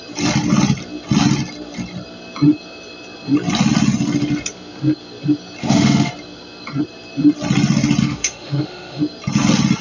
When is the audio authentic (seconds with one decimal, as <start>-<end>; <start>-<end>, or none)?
0.0-5.6; 6.1-8.0; 9.0-9.8